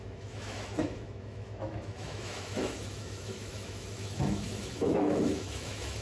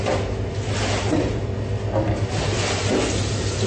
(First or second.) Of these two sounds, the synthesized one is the first